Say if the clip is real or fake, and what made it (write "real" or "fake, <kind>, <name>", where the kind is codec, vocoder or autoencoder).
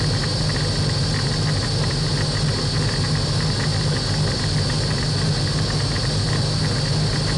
real